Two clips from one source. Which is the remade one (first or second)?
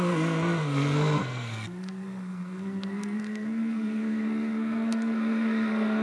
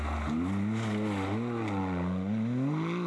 first